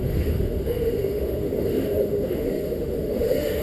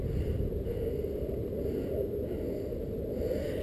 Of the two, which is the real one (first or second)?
second